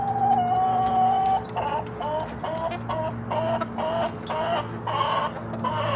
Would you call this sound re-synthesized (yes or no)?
no